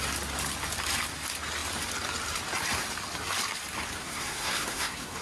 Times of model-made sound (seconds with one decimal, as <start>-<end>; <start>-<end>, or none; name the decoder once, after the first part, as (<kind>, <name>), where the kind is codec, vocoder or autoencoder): 4.0-5.2 (codec, SNAC)